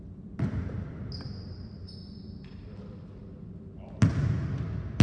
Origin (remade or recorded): recorded